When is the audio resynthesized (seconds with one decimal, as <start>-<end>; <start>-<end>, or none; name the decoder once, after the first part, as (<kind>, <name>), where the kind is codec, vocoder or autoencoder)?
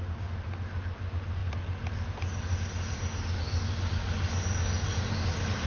none